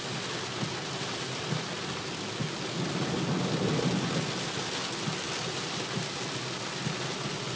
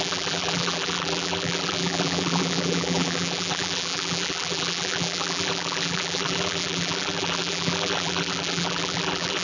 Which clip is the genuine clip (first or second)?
first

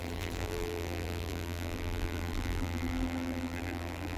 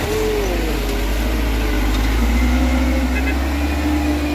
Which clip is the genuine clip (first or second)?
second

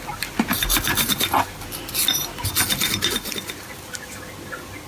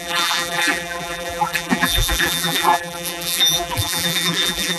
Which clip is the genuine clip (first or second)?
first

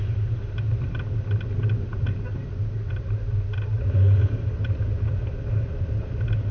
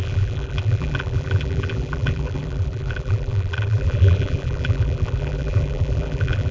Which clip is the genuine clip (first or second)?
first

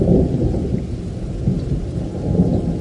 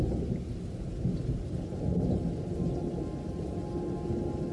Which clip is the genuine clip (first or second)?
second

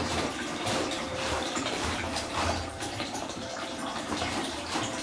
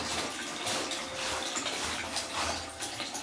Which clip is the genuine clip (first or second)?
second